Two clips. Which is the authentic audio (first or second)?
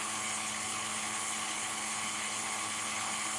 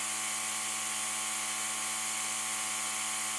second